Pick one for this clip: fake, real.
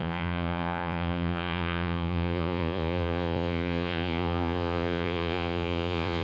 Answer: fake